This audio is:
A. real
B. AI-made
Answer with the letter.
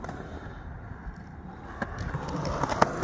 A